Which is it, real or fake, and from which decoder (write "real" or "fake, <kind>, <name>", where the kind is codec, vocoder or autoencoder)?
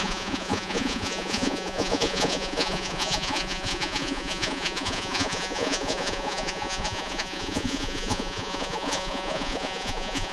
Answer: fake, vocoder, Vocos